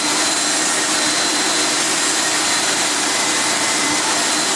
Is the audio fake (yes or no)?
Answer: no